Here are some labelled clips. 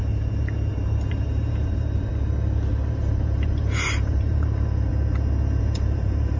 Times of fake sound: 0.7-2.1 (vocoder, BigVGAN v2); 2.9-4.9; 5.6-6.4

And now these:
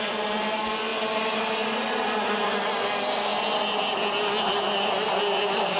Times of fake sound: 0.0-0.9 (vocoder, BigVGAN v2); 4.4-5.8

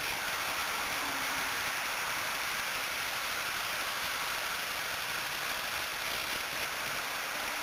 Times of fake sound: 0.6-4.8 (vocoder, BigVGAN v2)